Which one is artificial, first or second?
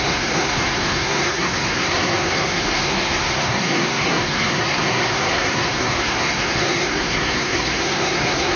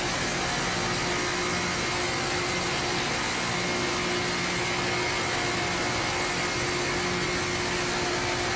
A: first